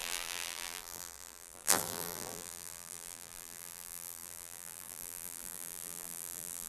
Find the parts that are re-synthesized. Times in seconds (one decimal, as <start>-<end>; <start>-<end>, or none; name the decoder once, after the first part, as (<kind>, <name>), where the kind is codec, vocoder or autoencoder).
0.0-6.7 (vocoder, BigVGAN v2)

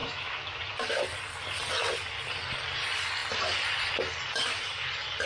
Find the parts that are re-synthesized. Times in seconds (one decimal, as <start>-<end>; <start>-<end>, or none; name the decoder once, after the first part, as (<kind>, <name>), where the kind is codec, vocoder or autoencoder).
0.0-0.6 (autoencoder, DAC-VAE)

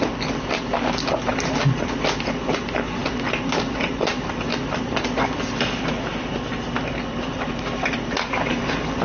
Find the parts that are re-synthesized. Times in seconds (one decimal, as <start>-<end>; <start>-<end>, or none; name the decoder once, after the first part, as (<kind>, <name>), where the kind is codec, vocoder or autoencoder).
none

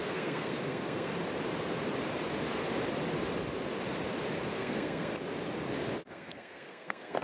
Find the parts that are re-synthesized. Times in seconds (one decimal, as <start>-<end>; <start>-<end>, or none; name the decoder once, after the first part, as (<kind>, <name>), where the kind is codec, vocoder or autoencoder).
0.0-1.1 (codec, SNAC); 4.5-5.1; 6.1-7.2

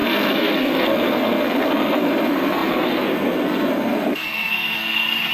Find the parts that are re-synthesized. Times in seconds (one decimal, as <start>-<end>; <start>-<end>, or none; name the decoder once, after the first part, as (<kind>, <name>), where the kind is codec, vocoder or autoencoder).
0.0-5.3 (codec, SNAC)